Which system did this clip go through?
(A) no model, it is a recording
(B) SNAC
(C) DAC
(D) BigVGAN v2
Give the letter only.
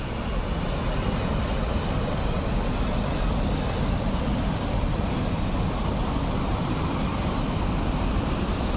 A